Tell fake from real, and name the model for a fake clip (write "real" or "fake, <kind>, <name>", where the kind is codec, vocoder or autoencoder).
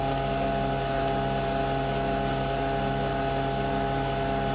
real